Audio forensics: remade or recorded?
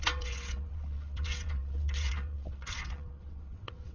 remade